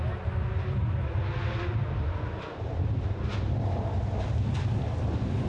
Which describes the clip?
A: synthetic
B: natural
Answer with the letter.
B